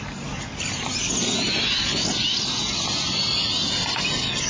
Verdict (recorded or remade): recorded